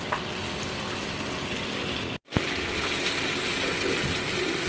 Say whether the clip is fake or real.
real